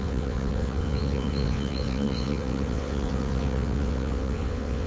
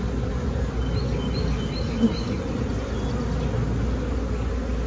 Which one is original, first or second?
second